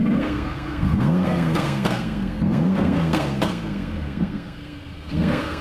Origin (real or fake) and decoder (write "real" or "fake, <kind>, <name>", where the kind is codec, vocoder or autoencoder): fake, codec, SNAC